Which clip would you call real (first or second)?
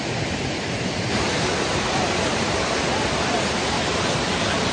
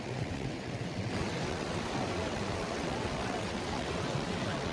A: first